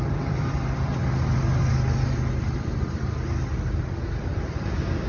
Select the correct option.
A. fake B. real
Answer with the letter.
B